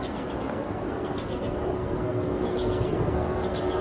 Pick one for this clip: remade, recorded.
remade